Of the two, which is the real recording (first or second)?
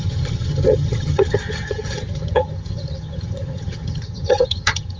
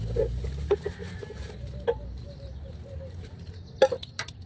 second